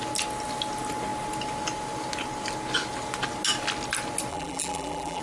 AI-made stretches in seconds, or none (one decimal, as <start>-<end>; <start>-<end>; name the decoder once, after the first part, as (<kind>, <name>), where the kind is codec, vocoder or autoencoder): 4.3-5.2 (vocoder, BigVGAN v2)